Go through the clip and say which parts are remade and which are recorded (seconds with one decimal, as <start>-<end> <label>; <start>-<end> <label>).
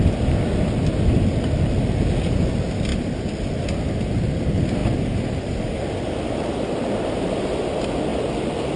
0.0-8.8 recorded